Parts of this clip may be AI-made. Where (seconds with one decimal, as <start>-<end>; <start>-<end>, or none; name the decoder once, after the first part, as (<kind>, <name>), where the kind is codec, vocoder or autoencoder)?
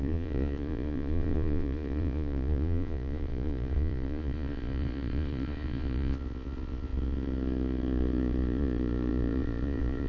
0.0-10.1 (vocoder, Vocos)